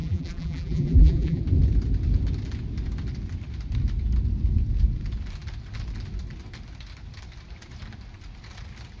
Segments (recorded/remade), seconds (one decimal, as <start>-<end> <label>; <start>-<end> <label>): 0.0-1.4 remade; 1.4-9.0 recorded